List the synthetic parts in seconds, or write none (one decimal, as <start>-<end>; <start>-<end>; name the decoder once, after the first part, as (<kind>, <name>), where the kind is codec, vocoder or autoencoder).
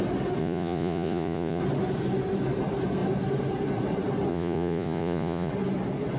0.4-1.6 (vocoder, Vocos); 4.3-5.5